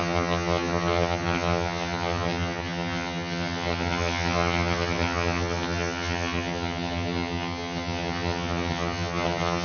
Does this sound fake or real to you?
fake